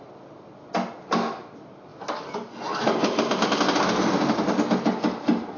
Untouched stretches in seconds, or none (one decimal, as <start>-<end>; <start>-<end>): 0.0-5.6